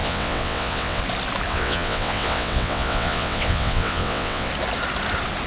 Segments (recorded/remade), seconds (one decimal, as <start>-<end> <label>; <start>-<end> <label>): 0.0-1.0 remade; 1.0-1.5 recorded; 1.5-4.5 remade; 4.5-5.5 recorded